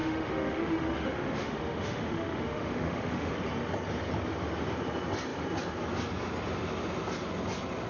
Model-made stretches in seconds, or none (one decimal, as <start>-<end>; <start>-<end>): 0.0-3.3

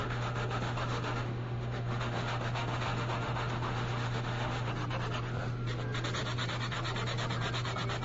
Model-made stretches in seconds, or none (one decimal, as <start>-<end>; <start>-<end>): 0.0-4.7

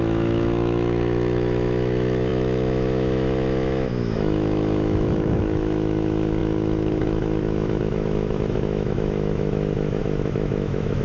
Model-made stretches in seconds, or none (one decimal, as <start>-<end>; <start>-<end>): 0.0-11.0

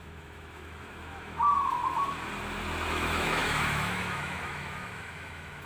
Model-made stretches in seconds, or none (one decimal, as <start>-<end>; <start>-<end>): 0.0-1.8; 2.9-5.7

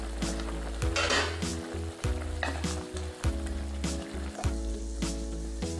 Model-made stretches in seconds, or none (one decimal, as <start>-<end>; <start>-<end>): none

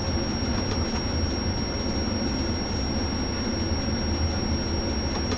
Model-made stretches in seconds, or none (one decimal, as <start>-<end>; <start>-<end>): none

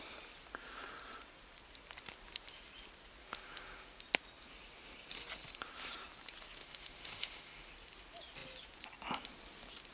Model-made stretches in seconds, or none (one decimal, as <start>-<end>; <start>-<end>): 3.2-4.0; 6.6-7.7